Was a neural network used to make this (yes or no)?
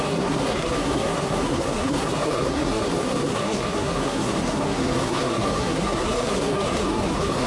yes